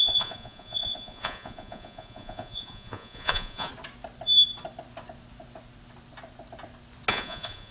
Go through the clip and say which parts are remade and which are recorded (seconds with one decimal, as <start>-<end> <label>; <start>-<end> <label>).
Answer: 0.0-3.7 remade; 3.7-7.1 recorded; 7.1-7.7 remade